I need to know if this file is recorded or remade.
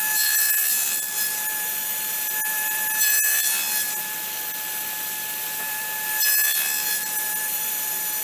remade